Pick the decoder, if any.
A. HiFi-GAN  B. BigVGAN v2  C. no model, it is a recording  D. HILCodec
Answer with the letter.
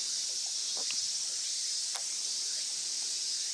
C